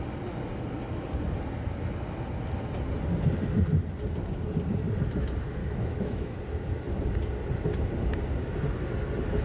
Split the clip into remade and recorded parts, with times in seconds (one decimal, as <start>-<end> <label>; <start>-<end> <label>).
0.0-5.6 recorded; 5.6-6.4 remade; 6.4-9.4 recorded